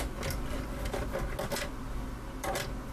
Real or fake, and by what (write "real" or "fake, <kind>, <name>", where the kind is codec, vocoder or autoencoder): real